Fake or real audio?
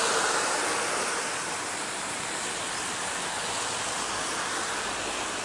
real